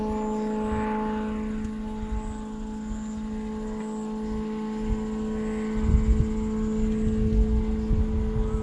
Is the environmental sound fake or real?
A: real